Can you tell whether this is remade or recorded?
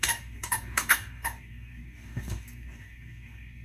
remade